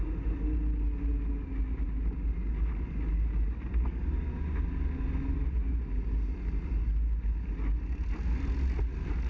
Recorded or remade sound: recorded